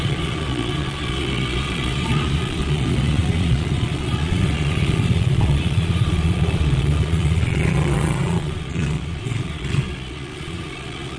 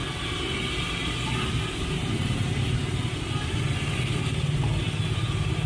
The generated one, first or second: first